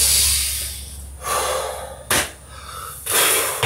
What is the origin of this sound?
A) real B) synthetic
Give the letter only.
A